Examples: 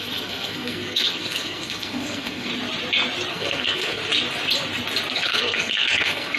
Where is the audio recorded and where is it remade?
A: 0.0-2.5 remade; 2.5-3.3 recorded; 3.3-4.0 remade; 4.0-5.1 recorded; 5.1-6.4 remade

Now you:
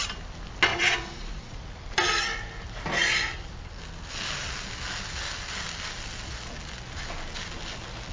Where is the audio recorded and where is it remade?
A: 0.0-0.7 recorded; 0.7-1.6 remade; 1.6-8.1 recorded

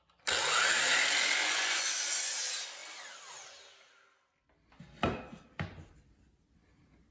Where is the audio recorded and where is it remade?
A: 0.0-1.4 recorded; 1.4-2.4 remade; 2.4-7.1 recorded

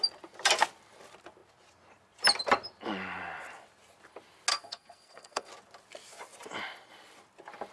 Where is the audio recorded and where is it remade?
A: 0.0-4.5 recorded; 4.5-5.5 remade; 5.5-7.7 recorded